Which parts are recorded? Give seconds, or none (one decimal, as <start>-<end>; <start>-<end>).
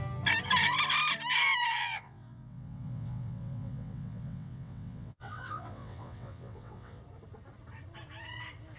0.0-1.8; 7.0-8.8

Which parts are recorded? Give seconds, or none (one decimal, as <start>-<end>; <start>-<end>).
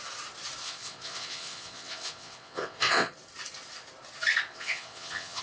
0.0-0.6; 3.1-4.5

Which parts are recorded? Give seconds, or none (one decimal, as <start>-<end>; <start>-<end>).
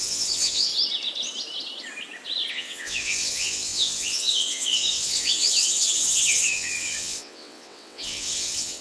0.7-2.5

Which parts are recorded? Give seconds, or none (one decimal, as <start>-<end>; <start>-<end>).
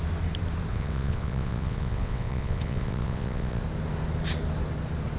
0.0-0.7; 3.6-5.2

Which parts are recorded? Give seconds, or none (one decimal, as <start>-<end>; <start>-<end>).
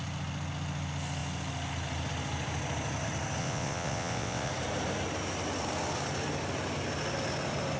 0.0-3.4; 4.5-7.8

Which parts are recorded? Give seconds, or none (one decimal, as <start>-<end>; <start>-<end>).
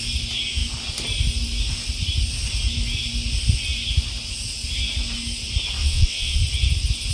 0.0-5.8; 6.4-7.1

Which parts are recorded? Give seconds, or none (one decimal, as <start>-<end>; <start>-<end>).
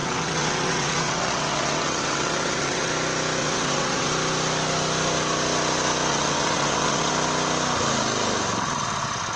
2.9-3.4; 4.1-6.1; 7.1-9.4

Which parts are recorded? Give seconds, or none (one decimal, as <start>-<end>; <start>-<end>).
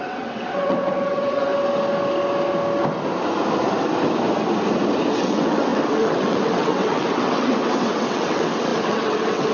1.5-5.2